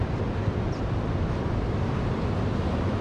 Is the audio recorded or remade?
remade